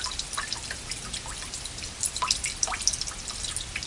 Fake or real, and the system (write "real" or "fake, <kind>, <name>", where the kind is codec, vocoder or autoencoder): fake, vocoder, BigVGAN v2